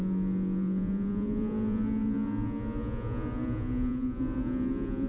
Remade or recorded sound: remade